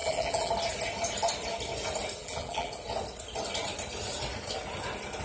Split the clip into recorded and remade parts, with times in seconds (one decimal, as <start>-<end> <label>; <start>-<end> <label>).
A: 0.0-0.5 remade; 0.5-2.2 recorded; 2.2-2.7 remade; 2.7-5.2 recorded